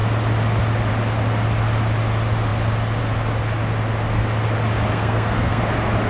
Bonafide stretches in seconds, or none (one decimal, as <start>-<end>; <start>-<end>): 0.0-4.9; 5.6-6.1